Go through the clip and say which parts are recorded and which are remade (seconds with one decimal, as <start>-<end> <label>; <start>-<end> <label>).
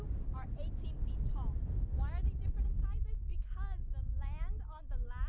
0.0-1.3 recorded; 1.3-2.0 remade; 2.0-5.3 recorded